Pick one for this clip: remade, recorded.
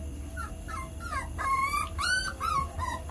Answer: recorded